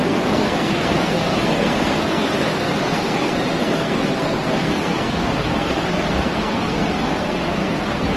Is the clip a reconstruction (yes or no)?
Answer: yes